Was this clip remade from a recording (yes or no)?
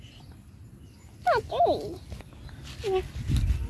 no